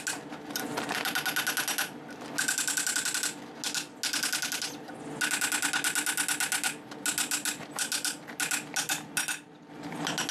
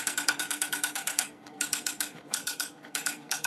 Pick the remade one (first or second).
second